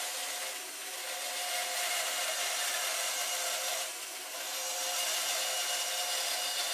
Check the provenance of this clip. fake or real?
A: real